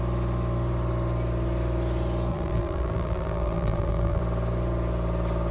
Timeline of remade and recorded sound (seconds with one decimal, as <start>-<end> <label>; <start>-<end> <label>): 0.0-2.3 recorded; 2.3-4.2 remade; 4.2-5.5 recorded